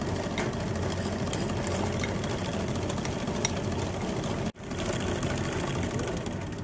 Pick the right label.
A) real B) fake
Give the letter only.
A